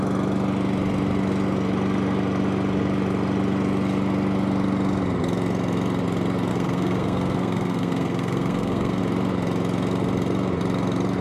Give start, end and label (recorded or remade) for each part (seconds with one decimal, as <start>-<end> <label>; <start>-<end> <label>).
0.0-6.5 recorded; 6.5-9.0 remade; 9.0-11.2 recorded